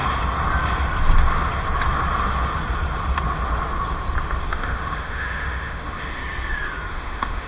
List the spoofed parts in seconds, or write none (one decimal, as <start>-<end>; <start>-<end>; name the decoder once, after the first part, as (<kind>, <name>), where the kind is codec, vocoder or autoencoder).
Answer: 4.5-6.2 (autoencoder, DAC-VAE); 6.9-7.5